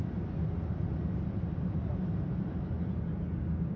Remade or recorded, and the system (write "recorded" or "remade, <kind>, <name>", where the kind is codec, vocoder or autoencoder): recorded